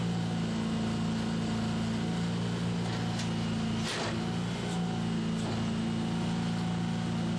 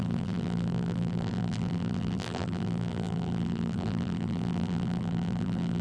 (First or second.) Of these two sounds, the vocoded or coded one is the second